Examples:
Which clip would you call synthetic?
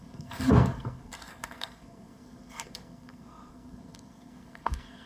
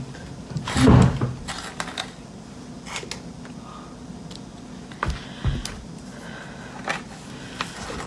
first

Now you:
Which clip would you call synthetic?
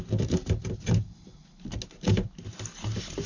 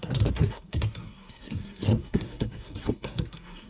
second